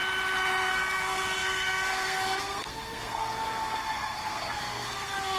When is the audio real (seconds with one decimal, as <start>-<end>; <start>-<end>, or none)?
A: 0.0-0.7